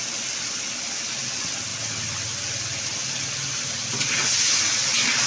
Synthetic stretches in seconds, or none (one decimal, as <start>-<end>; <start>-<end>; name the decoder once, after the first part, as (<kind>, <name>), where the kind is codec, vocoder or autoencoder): none